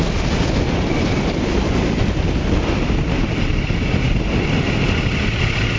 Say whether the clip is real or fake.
real